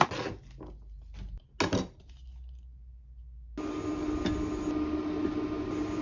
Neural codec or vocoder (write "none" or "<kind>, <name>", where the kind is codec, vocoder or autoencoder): none